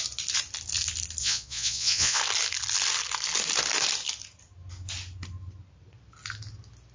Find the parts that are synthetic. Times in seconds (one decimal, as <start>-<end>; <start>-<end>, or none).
1.2-2.2